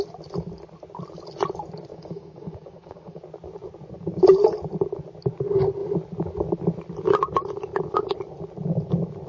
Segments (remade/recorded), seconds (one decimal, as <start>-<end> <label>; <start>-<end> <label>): 0.0-1.9 recorded; 1.9-3.2 remade; 3.2-9.3 recorded